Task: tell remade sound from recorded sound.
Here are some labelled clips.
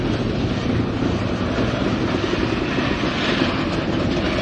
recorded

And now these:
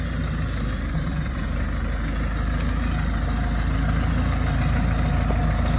recorded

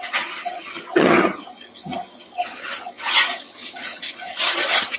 remade